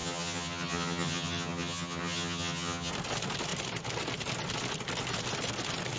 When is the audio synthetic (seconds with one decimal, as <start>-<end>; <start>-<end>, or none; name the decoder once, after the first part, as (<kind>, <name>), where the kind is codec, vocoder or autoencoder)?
0.0-2.9 (vocoder, HiFi-GAN)